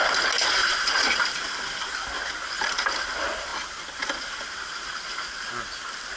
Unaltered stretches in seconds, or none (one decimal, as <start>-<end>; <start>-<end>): 0.0-0.6; 1.2-6.2